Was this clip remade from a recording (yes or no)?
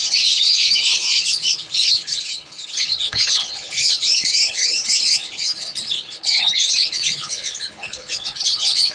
yes